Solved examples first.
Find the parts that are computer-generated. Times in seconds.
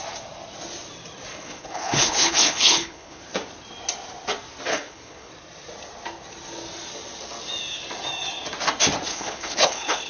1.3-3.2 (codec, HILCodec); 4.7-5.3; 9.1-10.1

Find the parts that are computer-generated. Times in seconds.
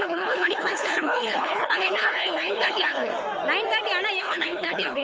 0.0-3.1 (codec, HILCodec); 4.2-5.0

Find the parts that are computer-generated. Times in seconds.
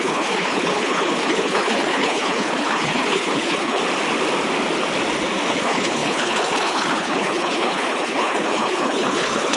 0.0-3.8 (codec, HILCodec); 5.5-9.6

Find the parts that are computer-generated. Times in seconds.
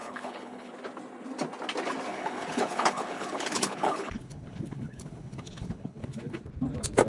0.0-0.7 (codec, HILCodec); 2.1-6.4